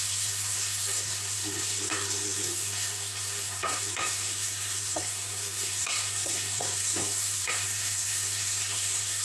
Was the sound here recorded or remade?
remade